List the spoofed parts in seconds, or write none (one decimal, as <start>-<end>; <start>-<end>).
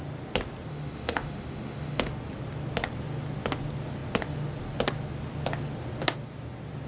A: 0.7-2.1